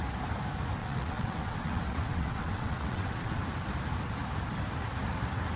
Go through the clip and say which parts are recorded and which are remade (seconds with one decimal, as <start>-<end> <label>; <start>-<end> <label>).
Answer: 0.0-0.8 recorded; 0.8-3.4 remade; 3.4-5.6 recorded